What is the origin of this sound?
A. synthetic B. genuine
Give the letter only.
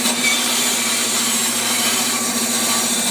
A